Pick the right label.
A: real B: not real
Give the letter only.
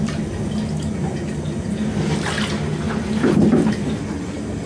A